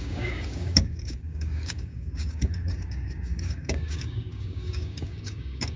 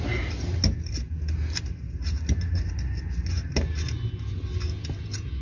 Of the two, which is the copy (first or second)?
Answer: first